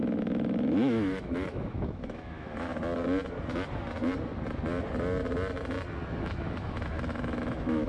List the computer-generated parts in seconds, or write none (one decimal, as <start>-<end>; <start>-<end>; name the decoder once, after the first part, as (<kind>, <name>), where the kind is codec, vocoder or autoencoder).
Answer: 0.0-2.7 (autoencoder, DAC-VAE); 6.2-7.9